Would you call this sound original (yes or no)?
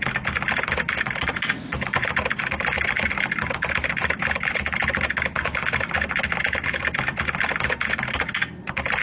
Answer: yes